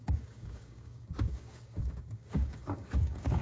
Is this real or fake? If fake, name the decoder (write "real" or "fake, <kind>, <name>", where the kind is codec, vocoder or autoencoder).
fake, codec, DAC